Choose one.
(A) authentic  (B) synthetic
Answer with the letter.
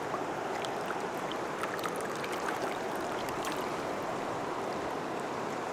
B